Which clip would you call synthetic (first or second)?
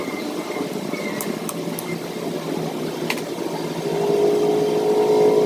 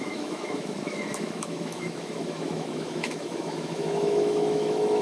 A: second